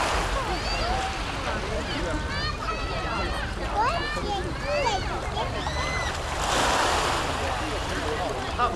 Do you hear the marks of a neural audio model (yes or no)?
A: no